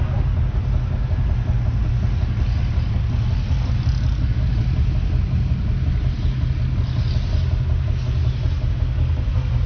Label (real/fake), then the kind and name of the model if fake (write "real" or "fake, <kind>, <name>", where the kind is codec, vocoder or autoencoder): real